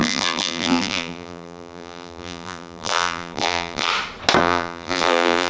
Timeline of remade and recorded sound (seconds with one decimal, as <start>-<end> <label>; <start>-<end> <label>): 0.0-3.9 remade; 3.9-4.4 recorded; 4.4-5.5 remade